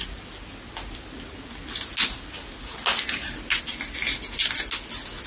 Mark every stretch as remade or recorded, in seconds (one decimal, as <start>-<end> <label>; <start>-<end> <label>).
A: 0.0-5.3 recorded